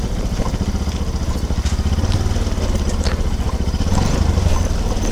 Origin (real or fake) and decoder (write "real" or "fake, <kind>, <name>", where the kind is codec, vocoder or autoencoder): real